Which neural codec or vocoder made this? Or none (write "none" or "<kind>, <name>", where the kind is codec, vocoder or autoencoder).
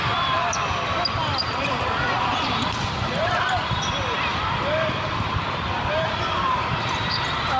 none